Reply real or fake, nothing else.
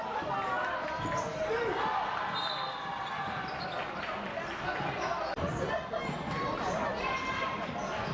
real